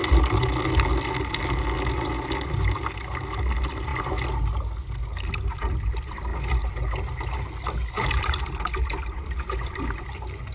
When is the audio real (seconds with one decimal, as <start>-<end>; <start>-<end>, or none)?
0.0-10.5